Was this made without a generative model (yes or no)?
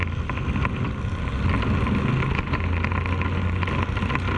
yes